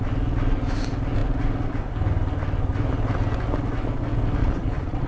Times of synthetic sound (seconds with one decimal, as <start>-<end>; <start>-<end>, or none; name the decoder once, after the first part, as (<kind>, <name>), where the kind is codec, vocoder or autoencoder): 4.4-5.1 (vocoder, Vocos)